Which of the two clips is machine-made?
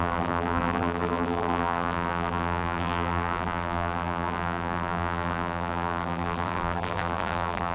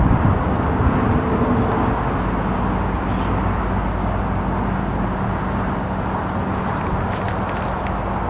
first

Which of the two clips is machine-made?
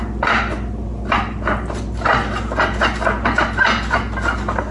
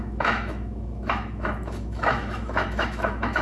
second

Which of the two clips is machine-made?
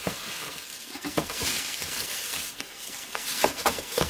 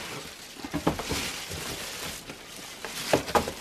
first